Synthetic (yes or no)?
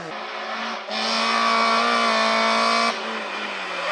no